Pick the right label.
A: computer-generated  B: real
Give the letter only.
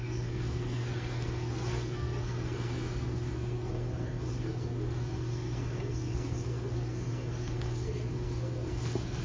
A